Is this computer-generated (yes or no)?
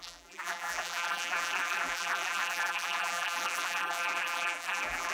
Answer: yes